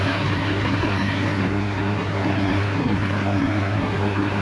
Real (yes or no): no